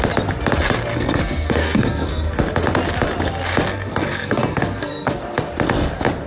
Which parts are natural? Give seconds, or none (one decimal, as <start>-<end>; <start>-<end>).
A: 0.0-0.9; 2.4-3.7; 5.2-6.3